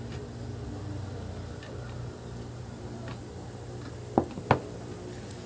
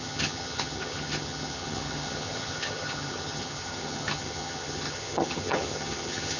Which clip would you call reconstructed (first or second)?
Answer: second